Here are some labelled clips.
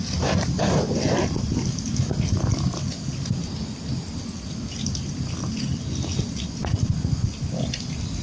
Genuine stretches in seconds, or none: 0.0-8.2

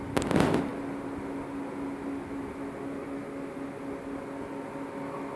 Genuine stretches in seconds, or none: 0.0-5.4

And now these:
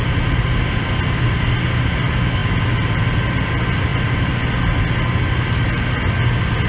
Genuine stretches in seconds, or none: 0.0-6.7

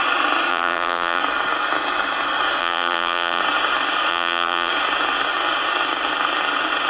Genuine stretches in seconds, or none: 0.0-0.5; 1.2-2.6; 3.4-4.1; 4.7-6.9

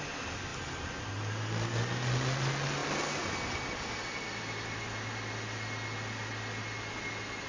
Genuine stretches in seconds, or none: 0.0-7.5

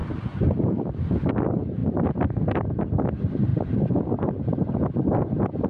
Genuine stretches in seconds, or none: 0.8-3.5; 4.3-5.7

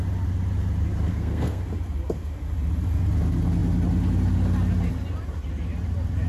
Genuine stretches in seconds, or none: 0.0-1.1; 1.6-6.3

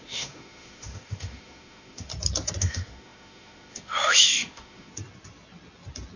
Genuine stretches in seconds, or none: 2.1-2.6; 4.9-6.2